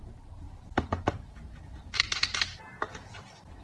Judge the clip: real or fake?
fake